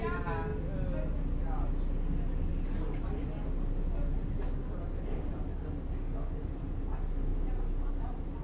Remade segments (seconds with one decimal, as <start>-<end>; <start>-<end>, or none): none